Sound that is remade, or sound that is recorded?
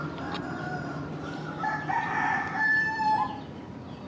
remade